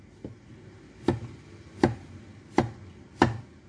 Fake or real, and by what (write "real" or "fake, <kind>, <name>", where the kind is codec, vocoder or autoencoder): real